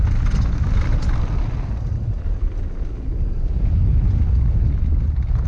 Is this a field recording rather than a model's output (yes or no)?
yes